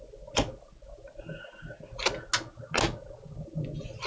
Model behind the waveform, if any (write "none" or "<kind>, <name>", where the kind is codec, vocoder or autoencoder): none